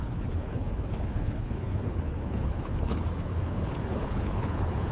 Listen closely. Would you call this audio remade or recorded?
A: remade